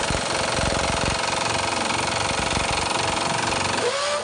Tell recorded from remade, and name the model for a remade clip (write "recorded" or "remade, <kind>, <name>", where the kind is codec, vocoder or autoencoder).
recorded